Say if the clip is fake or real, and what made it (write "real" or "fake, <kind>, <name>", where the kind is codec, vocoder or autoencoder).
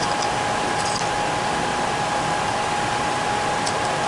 real